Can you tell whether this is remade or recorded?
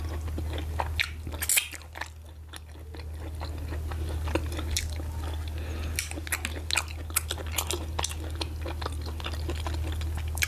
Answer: recorded